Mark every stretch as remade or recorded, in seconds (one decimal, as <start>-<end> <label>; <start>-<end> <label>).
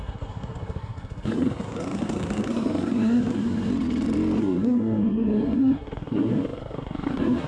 0.0-3.7 remade; 3.7-4.4 recorded; 4.4-7.5 remade